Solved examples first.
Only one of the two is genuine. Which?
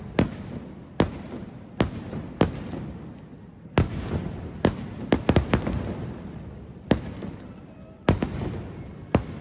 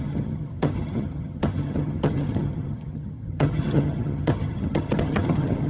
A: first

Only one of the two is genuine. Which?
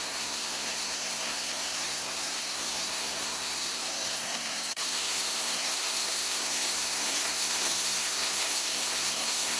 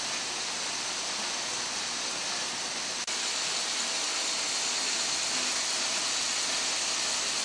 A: second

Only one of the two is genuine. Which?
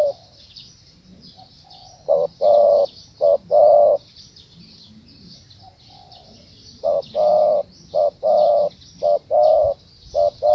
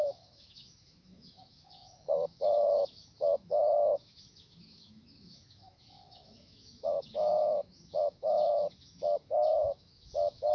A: first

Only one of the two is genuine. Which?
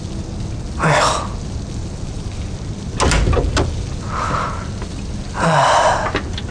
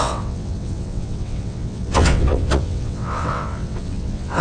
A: first